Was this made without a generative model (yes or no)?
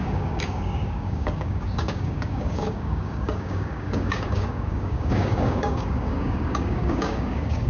no